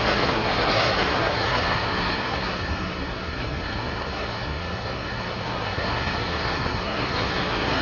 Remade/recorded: remade